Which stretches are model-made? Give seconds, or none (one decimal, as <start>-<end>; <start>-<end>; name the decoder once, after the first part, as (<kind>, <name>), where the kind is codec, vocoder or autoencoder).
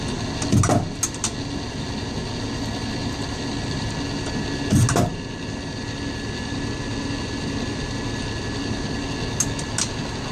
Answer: none